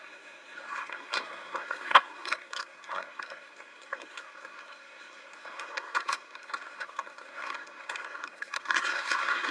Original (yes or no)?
no